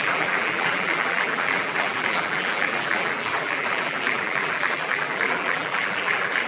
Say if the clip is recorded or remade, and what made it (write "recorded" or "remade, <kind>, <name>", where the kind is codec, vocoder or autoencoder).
remade, vocoder, BigVGAN v2